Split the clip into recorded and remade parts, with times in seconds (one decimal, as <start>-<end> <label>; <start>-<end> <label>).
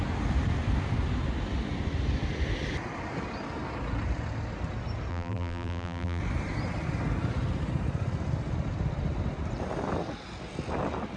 0.0-5.1 recorded; 5.1-6.2 remade; 6.2-11.2 recorded